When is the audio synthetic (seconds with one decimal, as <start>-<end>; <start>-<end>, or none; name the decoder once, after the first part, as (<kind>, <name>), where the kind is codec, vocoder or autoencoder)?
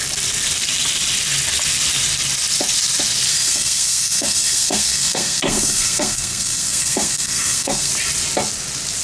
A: 3.3-7.9 (codec, SNAC)